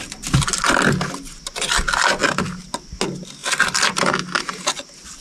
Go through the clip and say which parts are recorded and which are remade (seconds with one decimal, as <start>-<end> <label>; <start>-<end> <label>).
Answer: 0.0-5.2 recorded